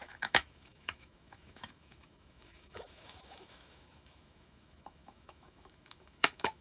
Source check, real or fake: fake